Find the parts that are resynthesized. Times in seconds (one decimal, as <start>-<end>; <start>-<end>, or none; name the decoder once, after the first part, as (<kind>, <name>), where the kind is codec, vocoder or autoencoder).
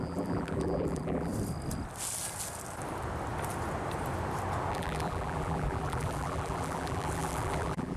0.0-1.3 (vocoder, BigVGAN v2); 4.7-8.0